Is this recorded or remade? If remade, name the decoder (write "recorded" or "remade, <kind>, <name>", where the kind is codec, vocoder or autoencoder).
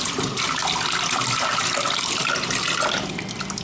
recorded